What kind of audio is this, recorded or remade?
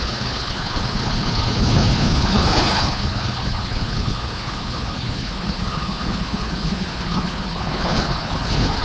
remade